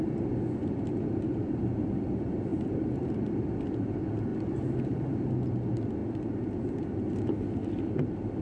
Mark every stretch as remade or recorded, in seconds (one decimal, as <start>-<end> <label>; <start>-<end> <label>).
0.0-2.5 recorded; 2.5-3.1 remade; 3.1-4.3 recorded; 4.3-5.3 remade; 5.3-8.4 recorded

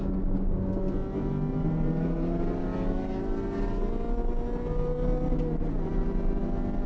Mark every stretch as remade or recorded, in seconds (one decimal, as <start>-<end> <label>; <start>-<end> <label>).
0.0-1.5 recorded; 1.5-2.6 remade; 2.6-6.9 recorded

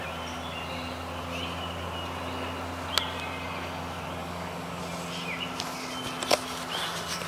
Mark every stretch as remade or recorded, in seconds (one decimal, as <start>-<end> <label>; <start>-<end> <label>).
0.0-4.2 recorded; 4.2-4.8 remade; 4.8-7.3 recorded

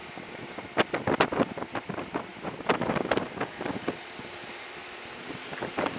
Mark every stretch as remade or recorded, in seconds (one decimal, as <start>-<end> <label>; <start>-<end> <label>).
0.0-0.6 remade; 0.6-2.3 recorded; 2.3-5.5 remade; 5.5-6.0 recorded

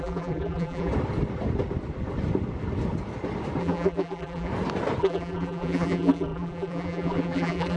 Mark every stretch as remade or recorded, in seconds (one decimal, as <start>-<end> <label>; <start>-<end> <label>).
0.0-0.9 remade; 0.9-3.6 recorded; 3.6-4.5 remade; 4.5-5.0 recorded; 5.0-7.8 remade

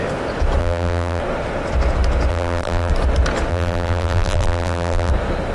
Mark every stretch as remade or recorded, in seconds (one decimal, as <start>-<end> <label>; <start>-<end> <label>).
0.0-0.6 recorded; 0.6-1.2 remade; 1.2-2.3 recorded; 2.3-2.9 remade; 2.9-3.5 recorded; 3.5-5.1 remade; 5.1-5.5 recorded

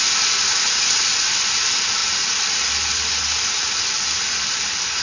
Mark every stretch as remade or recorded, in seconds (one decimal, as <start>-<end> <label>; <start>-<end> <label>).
0.0-2.0 recorded; 2.0-3.2 remade; 3.2-5.0 recorded

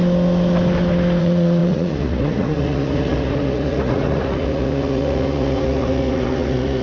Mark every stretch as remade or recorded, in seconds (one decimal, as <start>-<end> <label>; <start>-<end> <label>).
0.0-1.2 recorded; 1.2-6.8 remade